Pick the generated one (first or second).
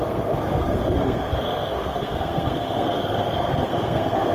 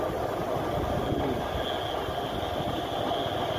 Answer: first